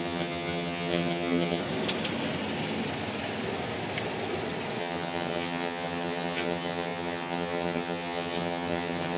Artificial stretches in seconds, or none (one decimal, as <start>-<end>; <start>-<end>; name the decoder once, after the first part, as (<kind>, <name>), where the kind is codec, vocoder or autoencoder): 0.0-1.6 (vocoder, HiFi-GAN); 4.8-9.2